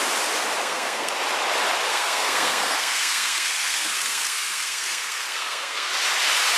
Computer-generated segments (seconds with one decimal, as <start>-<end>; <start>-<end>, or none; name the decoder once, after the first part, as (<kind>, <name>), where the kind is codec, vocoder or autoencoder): 0.6-1.1 (codec, SNAC); 1.9-5.9